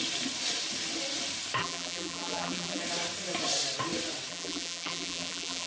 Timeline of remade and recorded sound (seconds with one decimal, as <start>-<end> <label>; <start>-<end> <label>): 0.0-1.6 recorded; 1.6-2.8 remade; 2.8-4.3 recorded; 4.3-5.7 remade